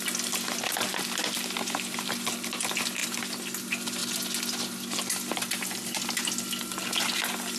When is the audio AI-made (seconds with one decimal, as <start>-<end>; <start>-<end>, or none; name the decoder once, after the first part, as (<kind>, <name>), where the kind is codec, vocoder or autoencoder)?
none